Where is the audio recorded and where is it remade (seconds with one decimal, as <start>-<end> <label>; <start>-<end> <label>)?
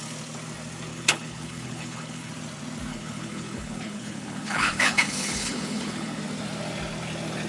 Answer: 0.0-0.9 recorded; 0.9-2.3 remade; 2.3-2.9 recorded; 2.9-6.2 remade; 6.2-7.5 recorded